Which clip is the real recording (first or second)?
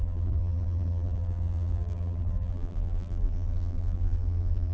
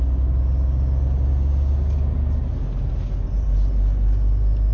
second